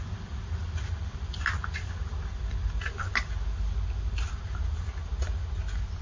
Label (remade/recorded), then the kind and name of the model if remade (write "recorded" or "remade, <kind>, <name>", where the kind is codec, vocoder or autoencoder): recorded